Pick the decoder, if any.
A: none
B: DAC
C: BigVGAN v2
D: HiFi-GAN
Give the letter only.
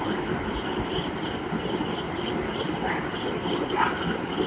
A